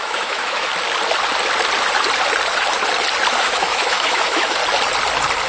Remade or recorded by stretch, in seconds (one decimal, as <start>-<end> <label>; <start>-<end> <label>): 0.0-0.7 remade; 0.7-3.4 recorded; 3.4-4.6 remade; 4.6-5.5 recorded

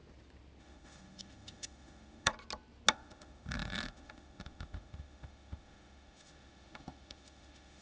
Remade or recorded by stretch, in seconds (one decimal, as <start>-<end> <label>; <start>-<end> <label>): 0.0-0.6 recorded; 0.6-2.3 remade; 2.3-2.9 recorded; 2.9-7.8 remade

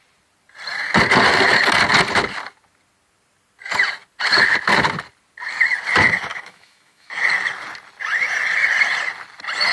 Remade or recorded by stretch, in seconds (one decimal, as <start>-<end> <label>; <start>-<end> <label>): 0.0-6.3 recorded; 6.3-7.2 remade; 7.2-9.7 recorded

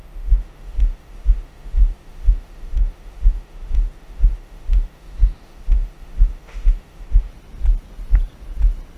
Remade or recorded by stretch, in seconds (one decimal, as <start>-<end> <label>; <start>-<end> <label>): 0.0-7.3 remade; 7.3-9.0 recorded

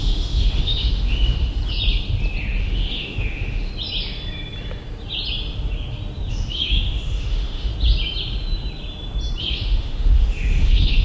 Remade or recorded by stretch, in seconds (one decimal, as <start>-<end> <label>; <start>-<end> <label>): 0.0-1.6 remade; 1.6-2.6 recorded; 2.6-3.7 remade; 3.7-6.3 recorded; 6.3-7.7 remade; 7.7-9.4 recorded; 9.4-11.0 remade